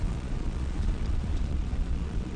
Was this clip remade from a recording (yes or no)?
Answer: yes